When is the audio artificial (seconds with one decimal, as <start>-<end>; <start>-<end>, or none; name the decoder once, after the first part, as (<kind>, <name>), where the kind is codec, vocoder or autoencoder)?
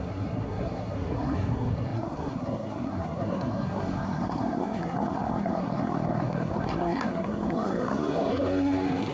0.0-9.1 (codec, SNAC)